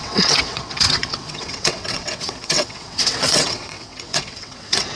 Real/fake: fake